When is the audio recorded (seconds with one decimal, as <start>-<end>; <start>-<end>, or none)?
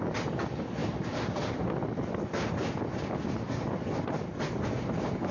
0.0-5.3